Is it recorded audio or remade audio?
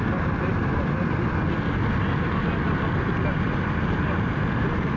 recorded